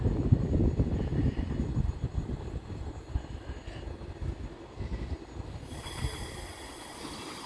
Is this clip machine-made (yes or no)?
no